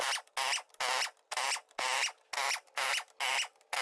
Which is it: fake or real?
real